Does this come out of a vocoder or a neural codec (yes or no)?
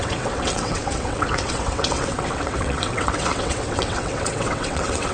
yes